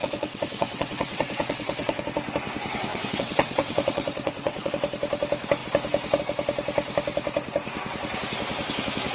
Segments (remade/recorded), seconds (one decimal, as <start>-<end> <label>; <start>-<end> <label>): 0.0-2.0 remade; 2.0-2.9 recorded; 2.9-4.7 remade; 4.7-9.1 recorded